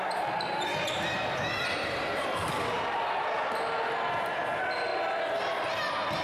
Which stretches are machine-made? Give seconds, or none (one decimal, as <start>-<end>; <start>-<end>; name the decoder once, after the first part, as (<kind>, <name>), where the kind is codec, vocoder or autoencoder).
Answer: none

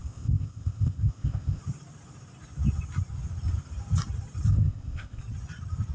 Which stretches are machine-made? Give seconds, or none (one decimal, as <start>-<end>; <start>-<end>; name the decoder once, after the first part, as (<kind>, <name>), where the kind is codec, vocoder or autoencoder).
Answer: 0.0-1.6 (codec, ZipCodec); 4.5-5.2